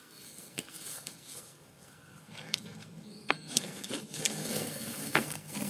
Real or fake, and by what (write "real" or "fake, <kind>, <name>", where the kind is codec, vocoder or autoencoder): fake, codec, SNAC